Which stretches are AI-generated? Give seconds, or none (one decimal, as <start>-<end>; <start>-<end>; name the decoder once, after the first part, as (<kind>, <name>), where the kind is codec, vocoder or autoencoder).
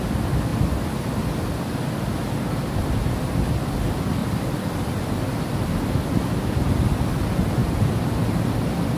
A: 4.2-6.0 (vocoder, BigVGAN v2); 7.6-9.0